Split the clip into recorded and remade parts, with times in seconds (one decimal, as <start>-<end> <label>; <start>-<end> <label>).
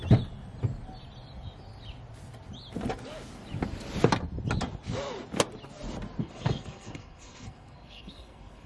0.0-6.2 recorded; 6.2-8.7 remade